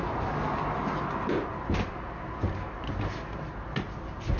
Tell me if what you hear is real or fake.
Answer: real